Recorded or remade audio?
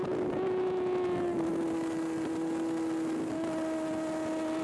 recorded